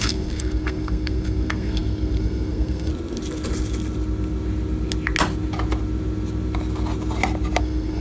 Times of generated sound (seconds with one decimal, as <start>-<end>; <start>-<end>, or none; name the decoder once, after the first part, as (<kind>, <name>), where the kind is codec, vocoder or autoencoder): 0.0-2.9 (codec, SNAC); 7.6-8.0